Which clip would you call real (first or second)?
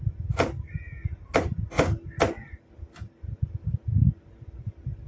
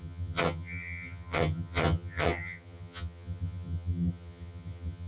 first